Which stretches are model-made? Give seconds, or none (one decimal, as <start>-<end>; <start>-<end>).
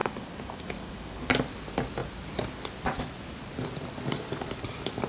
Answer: 0.0-1.2